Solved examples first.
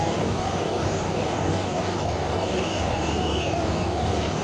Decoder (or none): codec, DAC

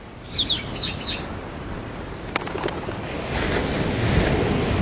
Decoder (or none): none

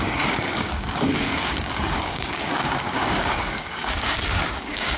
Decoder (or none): codec, DAC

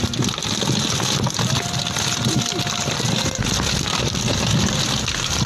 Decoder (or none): none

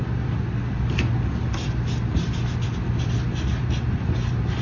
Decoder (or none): none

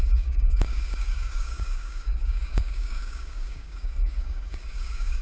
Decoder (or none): codec, DAC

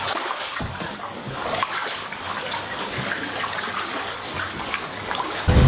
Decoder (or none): codec, DAC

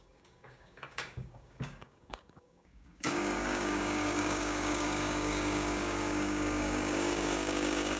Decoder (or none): codec, DAC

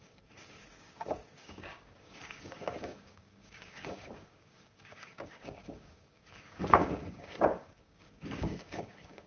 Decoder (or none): codec, DAC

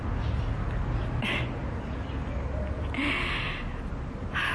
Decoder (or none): none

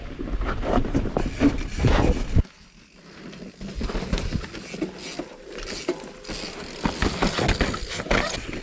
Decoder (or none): none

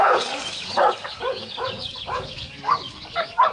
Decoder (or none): codec, DAC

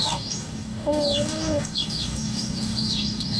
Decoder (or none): codec, DAC